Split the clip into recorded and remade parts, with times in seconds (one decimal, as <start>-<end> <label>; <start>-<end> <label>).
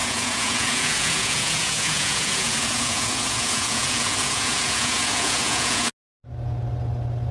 0.0-5.9 remade; 5.9-7.3 recorded